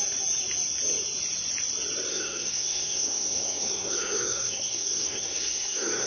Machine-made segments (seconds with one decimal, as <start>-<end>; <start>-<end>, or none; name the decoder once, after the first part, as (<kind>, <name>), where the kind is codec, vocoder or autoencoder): 2.1-6.1 (codec, SNAC)